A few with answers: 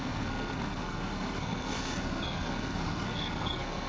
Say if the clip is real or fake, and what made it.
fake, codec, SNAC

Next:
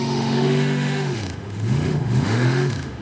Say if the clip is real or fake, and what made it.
fake, autoencoder, DAC-VAE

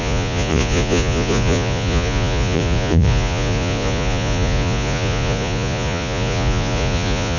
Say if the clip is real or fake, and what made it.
fake, vocoder, Vocos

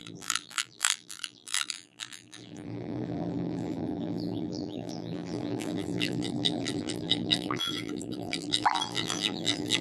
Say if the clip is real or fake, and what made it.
fake, vocoder, BigVGAN v2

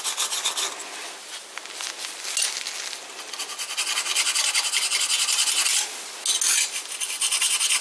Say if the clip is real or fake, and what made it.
real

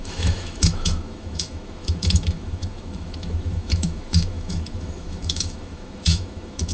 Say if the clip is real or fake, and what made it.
fake, autoencoder, DAC-VAE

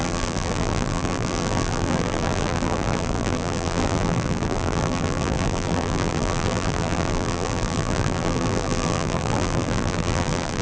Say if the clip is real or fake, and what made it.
fake, vocoder, BigVGAN v2